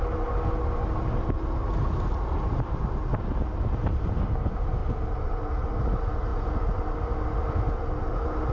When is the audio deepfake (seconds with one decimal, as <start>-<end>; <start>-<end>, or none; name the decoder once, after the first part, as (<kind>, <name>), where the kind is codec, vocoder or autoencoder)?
none